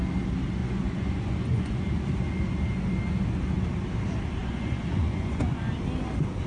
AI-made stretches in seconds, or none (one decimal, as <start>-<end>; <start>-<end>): 0.6-1.8; 4.4-5.7

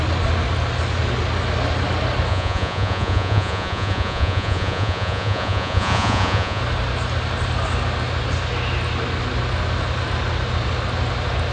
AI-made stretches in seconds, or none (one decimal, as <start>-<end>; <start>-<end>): 2.3-6.6

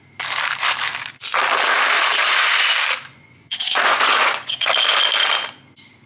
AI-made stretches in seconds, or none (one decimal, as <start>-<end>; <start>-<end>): 3.1-4.7

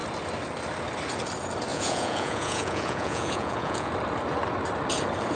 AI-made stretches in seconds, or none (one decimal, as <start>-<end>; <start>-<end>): 1.7-3.9